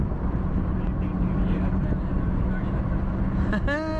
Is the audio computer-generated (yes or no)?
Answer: no